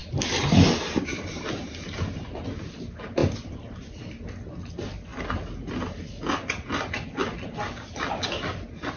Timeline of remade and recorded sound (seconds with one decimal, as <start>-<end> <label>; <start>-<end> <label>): 0.0-3.2 recorded; 3.2-4.1 remade; 4.1-9.0 recorded